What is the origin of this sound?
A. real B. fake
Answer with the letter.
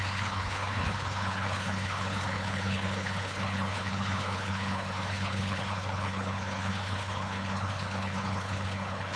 B